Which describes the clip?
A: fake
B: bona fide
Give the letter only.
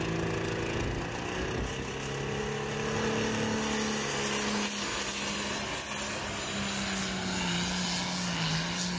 B